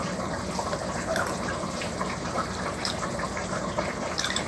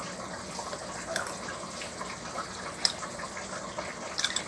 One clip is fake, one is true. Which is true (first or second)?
second